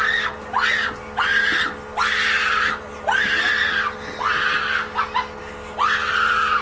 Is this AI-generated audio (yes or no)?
no